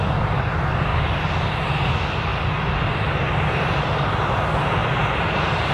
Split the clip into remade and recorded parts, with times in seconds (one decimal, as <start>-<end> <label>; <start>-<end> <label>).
0.0-5.7 recorded